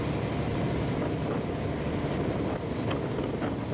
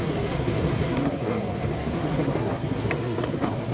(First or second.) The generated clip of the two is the second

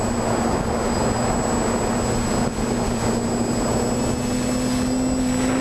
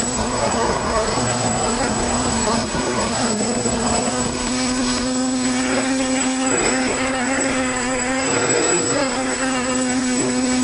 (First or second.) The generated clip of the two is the second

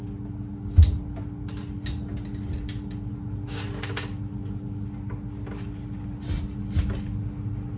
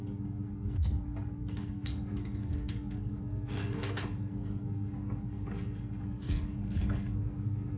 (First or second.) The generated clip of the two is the second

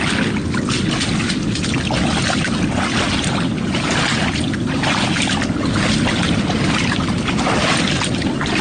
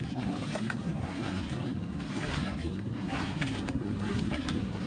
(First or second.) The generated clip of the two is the second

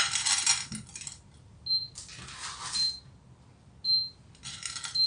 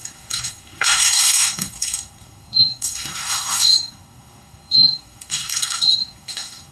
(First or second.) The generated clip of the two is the second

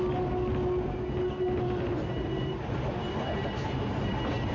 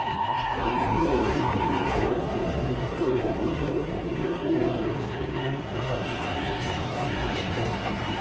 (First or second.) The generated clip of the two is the second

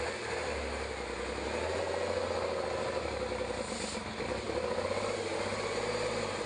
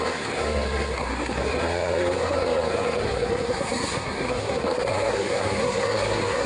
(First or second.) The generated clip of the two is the second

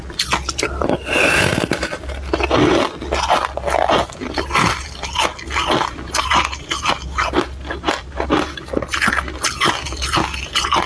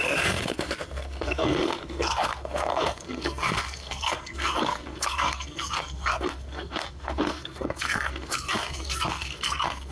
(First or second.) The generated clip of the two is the second